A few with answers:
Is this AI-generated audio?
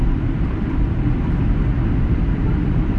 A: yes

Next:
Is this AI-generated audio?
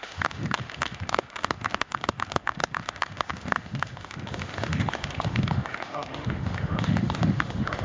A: yes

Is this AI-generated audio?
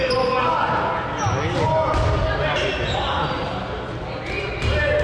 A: no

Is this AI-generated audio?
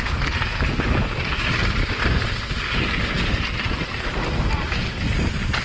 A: no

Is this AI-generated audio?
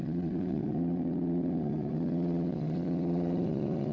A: yes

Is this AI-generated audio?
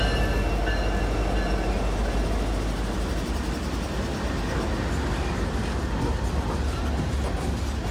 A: no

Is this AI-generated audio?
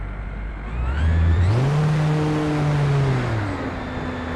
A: no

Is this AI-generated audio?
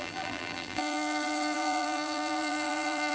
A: yes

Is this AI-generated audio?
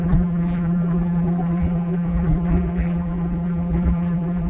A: yes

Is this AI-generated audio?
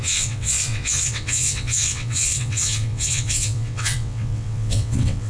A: yes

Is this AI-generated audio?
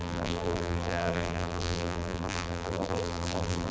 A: yes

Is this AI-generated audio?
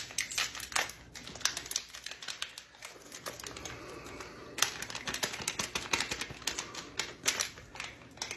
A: no